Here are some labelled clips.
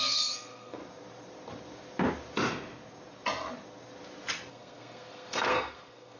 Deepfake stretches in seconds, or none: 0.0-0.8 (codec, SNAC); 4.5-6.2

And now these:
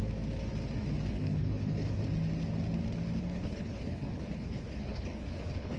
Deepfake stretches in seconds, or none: 1.1-2.0 (codec, HILCodec); 3.2-5.8

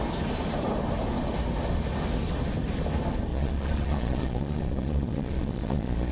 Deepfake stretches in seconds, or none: 3.3-6.1 (vocoder, Vocos)

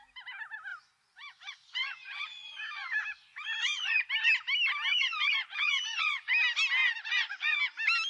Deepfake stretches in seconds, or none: 0.7-4.1 (vocoder, Vocos); 4.9-6.3; 6.8-7.6

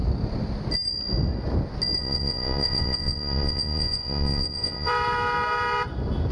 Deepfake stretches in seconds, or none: 2.0-4.9 (vocoder, Vocos)

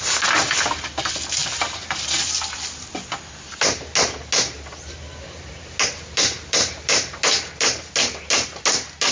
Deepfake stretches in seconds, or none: none

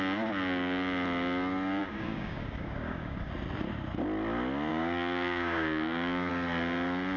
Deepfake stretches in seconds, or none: 1.8-3.3 (codec, DAC); 4.7-6.3

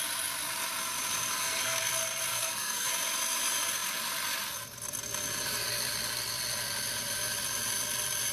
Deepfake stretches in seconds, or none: 1.3-1.9 (codec, SNAC); 2.3-2.9